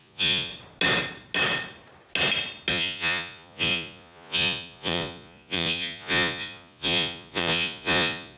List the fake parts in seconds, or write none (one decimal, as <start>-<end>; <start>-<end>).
0.0-0.5; 2.7-8.4